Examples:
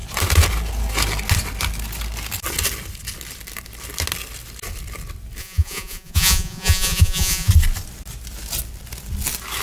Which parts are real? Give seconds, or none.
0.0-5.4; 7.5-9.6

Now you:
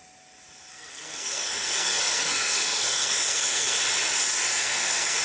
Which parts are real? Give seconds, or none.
0.0-0.7; 3.8-4.5